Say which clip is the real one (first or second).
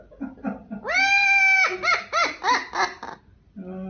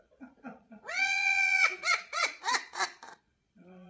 first